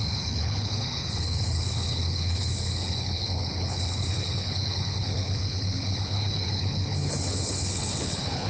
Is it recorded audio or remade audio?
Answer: remade